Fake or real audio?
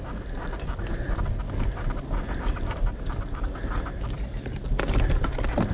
real